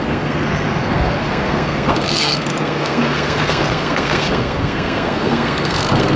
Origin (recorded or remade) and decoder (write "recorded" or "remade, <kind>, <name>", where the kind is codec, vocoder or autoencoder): remade, codec, SNAC